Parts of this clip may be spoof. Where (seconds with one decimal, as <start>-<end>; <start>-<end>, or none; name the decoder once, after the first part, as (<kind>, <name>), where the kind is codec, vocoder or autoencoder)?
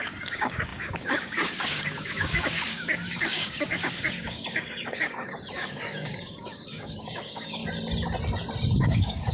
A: 0.0-7.6 (codec, DAC); 8.8-9.3